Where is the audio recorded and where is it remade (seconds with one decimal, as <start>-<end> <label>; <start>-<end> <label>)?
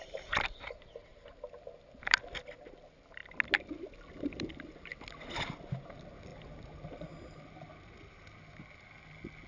0.0-9.5 recorded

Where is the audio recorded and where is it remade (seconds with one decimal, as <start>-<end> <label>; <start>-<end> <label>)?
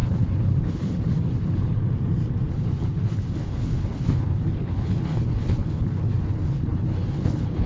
0.0-1.8 remade; 1.8-2.5 recorded; 2.5-7.7 remade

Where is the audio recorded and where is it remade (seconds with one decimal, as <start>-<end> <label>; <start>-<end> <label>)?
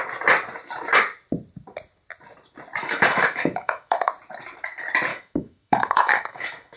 0.0-2.8 recorded; 2.8-4.1 remade; 4.1-5.1 recorded; 5.1-6.8 remade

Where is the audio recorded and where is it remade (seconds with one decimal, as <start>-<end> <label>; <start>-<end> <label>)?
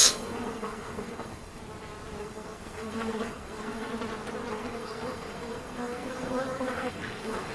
0.0-1.6 remade; 1.6-2.2 recorded; 2.2-3.9 remade; 3.9-4.5 recorded; 4.5-7.5 remade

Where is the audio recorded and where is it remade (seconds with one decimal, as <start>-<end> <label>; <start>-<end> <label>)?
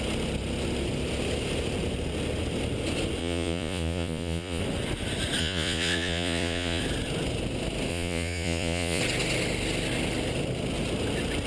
0.0-3.2 recorded; 3.2-4.6 remade; 4.6-5.4 recorded; 5.4-6.8 remade; 6.8-7.9 recorded; 7.9-9.0 remade; 9.0-11.5 recorded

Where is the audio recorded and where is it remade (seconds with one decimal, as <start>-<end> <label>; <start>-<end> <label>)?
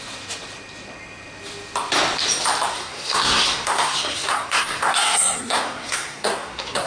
0.0-2.7 recorded; 2.7-6.9 remade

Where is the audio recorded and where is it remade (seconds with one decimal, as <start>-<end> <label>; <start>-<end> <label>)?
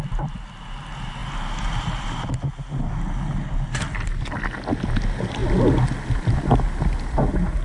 0.0-7.6 recorded